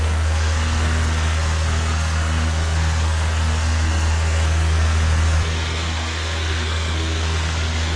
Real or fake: fake